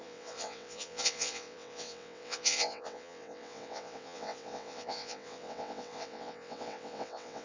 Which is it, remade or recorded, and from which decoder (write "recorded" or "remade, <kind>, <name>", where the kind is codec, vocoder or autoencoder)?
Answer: remade, vocoder, WaveNeXt